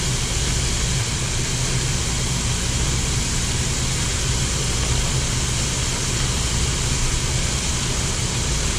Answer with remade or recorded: recorded